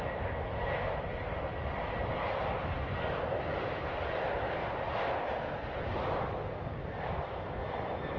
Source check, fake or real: real